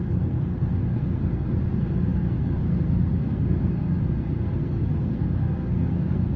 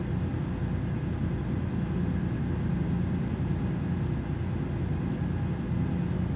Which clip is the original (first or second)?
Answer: second